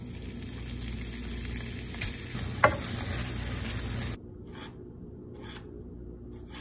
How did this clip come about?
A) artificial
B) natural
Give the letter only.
B